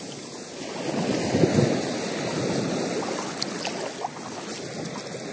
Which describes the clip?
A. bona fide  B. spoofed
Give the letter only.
A